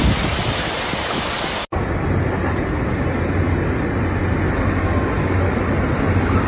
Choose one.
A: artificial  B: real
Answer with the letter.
B